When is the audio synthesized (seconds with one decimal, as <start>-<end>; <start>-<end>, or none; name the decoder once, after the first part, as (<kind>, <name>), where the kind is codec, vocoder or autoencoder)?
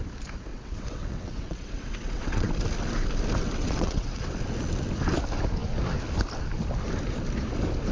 0.5-2.5 (vocoder, WaveNeXt); 3.4-4.2